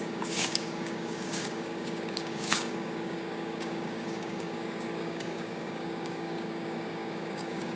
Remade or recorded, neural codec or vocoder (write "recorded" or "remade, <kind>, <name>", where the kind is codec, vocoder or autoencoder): remade, codec, DAC